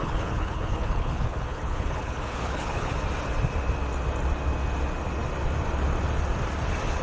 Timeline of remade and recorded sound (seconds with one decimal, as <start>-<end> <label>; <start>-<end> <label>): 0.0-2.9 remade; 2.9-7.0 recorded